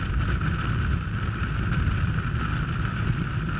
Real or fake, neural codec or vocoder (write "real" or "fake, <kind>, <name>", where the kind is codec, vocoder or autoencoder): real